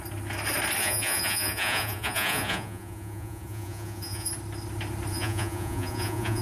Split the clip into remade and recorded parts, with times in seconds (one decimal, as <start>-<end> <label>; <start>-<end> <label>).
0.0-0.8 recorded; 0.8-4.3 remade; 4.3-5.1 recorded; 5.1-6.4 remade